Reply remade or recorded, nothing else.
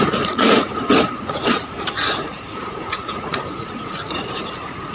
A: remade